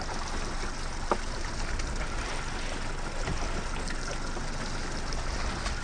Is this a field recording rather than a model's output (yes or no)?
yes